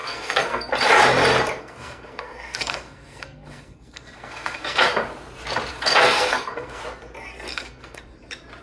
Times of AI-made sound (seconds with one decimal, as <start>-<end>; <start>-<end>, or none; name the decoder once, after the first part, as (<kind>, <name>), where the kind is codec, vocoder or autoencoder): 0.0-0.7 (codec, SNAC); 1.6-4.9; 5.7-6.8; 7.5-8.0